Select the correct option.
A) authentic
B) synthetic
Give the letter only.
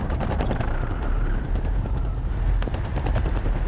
B